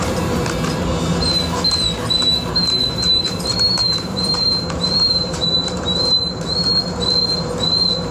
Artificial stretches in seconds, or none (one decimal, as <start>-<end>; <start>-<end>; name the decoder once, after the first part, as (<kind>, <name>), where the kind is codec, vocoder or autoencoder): 2.3-6.7 (vocoder, BigVGAN v2)